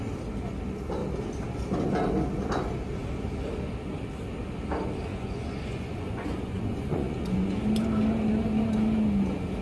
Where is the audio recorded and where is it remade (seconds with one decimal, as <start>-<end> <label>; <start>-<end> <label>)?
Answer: 0.0-5.1 recorded; 5.1-7.6 remade; 7.6-9.6 recorded